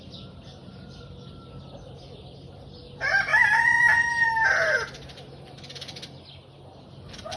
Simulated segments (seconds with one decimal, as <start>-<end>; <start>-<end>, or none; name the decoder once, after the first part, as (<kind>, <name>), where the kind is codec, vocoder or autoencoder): none